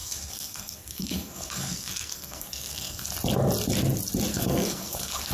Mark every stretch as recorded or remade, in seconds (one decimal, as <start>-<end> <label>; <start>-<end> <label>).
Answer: 0.0-3.1 remade; 3.1-4.3 recorded; 4.3-5.3 remade